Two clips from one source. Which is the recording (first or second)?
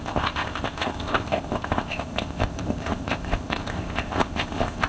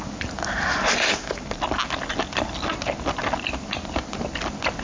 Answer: second